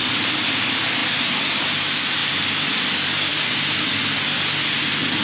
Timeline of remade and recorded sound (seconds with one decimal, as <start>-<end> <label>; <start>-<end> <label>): 0.0-1.0 remade; 1.0-1.6 recorded; 1.6-3.3 remade; 3.3-4.6 recorded; 4.6-5.2 remade